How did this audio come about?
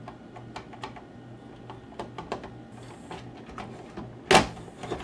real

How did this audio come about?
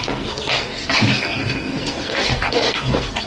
fake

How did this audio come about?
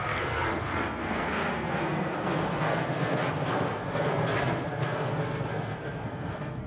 fake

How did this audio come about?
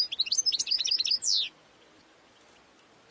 real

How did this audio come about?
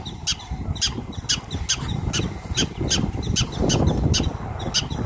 real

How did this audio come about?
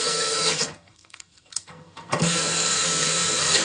fake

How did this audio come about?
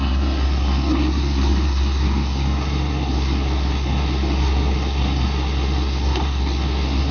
fake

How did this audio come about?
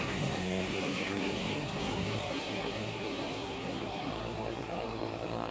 fake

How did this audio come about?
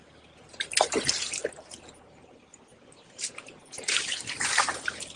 real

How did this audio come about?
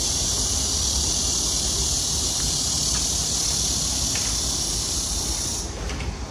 real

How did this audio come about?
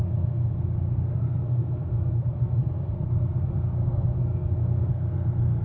fake